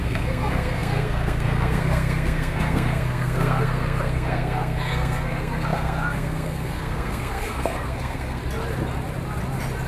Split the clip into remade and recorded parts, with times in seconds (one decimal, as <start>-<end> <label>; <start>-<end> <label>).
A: 0.0-8.4 remade; 8.4-9.9 recorded